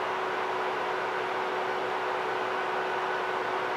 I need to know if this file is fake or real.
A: real